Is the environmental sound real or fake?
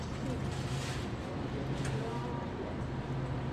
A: real